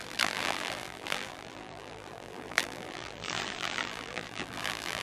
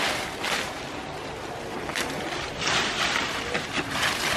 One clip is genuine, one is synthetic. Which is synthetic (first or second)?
first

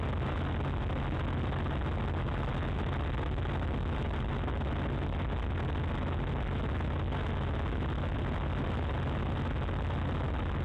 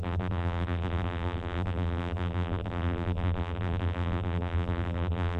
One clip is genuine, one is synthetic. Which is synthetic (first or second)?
second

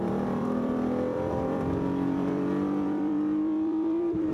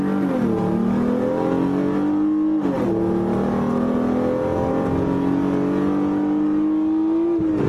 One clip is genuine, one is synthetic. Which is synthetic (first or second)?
first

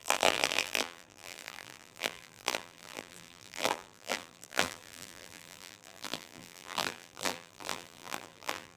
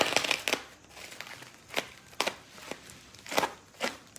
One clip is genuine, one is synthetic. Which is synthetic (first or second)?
first